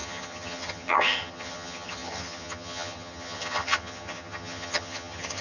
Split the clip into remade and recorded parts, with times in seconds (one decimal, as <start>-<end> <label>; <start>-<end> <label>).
0.0-5.4 remade